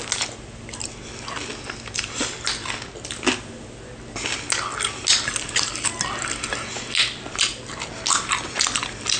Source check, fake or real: real